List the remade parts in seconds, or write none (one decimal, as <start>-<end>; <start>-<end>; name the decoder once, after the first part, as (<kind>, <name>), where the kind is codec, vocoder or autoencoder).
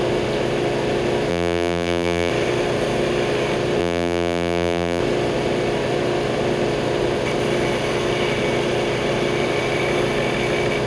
1.3-2.3 (vocoder, BigVGAN v2); 3.8-5.0